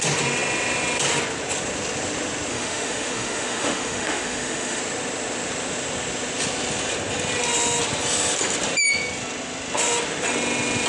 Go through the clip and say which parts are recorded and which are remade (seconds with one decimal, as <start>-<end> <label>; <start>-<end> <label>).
0.0-2.5 recorded; 2.5-4.8 remade; 4.8-10.9 recorded